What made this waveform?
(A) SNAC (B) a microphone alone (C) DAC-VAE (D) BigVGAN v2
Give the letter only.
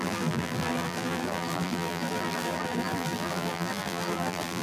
D